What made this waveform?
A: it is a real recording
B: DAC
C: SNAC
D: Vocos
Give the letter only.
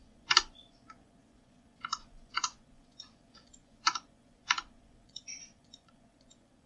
D